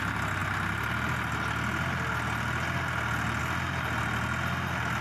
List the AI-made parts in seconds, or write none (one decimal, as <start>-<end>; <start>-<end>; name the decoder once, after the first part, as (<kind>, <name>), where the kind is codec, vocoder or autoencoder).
none